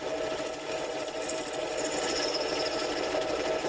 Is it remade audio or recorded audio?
recorded